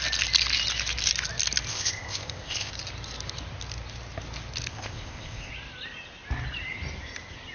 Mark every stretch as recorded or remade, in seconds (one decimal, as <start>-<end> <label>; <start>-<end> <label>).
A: 0.0-1.7 recorded; 1.7-2.7 remade; 2.7-4.7 recorded; 4.7-5.5 remade; 5.5-7.5 recorded